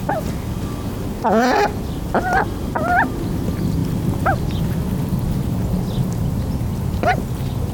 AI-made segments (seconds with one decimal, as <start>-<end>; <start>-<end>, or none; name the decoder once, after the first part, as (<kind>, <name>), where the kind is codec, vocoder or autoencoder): none